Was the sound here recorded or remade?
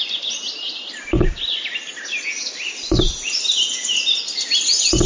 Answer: recorded